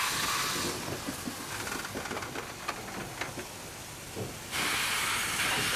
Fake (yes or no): no